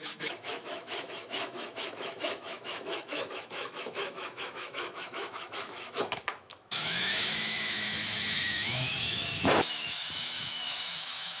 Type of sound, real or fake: fake